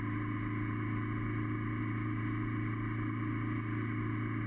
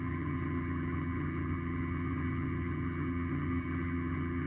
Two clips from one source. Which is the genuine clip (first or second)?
first